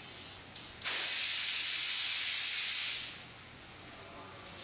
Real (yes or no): no